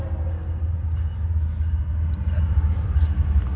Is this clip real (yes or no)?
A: yes